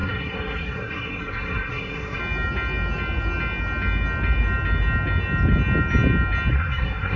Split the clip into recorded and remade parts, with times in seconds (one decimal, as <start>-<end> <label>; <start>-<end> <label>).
0.0-2.2 remade; 2.2-6.5 recorded; 6.5-7.2 remade